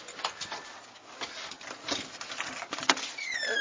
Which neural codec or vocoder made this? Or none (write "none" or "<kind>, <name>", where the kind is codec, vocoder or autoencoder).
none